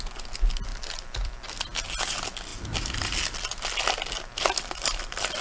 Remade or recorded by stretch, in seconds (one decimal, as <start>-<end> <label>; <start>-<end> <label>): 0.0-0.7 recorded; 0.7-1.4 remade; 1.4-5.4 recorded